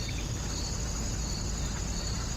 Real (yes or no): yes